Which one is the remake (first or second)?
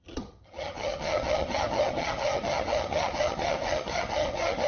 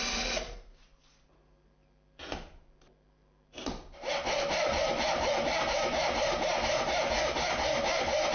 first